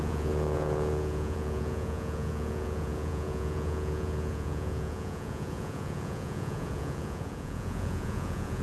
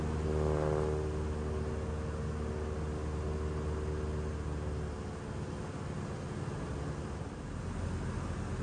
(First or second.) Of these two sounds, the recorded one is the second